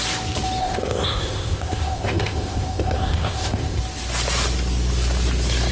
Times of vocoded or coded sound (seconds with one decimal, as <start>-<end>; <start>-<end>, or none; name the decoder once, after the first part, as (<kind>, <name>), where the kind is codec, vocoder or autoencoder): 0.6-3.8 (codec, ZipCodec)